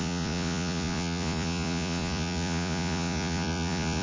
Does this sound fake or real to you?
fake